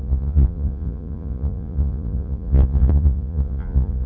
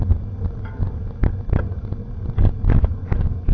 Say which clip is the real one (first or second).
second